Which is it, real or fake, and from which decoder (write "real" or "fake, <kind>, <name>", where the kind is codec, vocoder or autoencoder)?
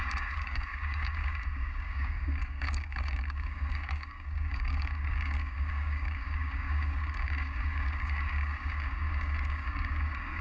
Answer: fake, codec, DAC